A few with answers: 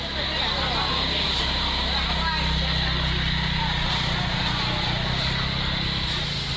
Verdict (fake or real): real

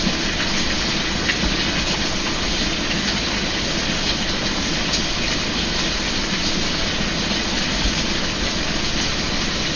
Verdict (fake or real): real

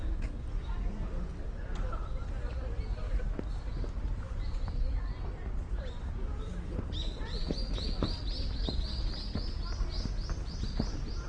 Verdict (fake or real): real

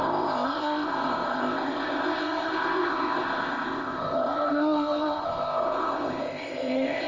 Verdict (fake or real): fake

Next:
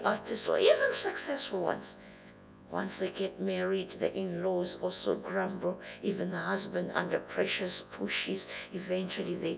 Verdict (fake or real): fake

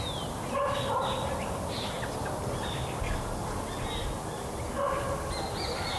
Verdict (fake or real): real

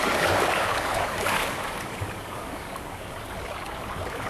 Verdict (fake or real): fake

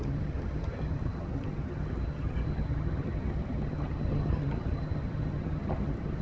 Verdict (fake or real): fake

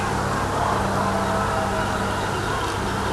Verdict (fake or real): real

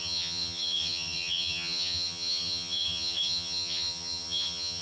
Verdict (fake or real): fake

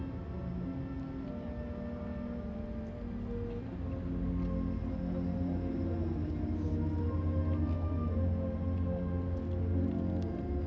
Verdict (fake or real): real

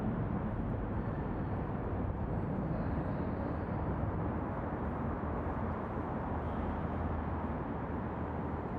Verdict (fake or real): fake